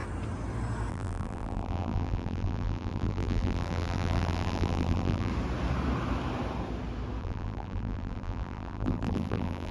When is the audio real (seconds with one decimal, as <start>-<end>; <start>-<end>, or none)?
0.0-0.9; 5.3-7.2